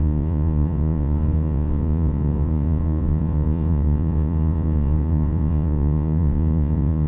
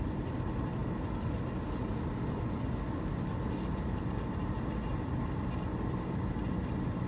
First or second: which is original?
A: second